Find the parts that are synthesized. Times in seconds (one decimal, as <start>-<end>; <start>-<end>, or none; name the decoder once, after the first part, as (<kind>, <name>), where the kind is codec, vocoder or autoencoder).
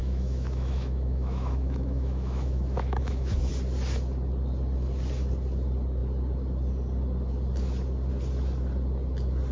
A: 0.0-3.5 (autoencoder, DAC-VAE)